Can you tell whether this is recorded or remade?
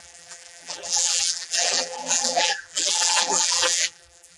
remade